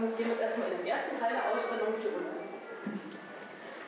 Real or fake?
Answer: real